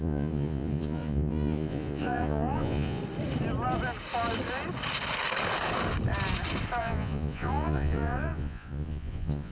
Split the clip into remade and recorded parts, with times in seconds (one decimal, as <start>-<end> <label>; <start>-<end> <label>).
0.0-3.0 remade; 3.0-6.8 recorded; 6.8-9.5 remade